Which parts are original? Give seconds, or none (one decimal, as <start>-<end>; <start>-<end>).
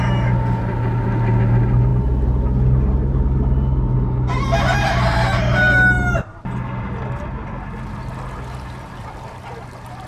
0.0-10.1